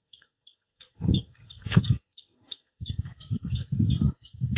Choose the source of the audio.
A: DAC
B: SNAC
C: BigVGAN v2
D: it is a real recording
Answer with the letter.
B